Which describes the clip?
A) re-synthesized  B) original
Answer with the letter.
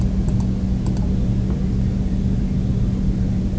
B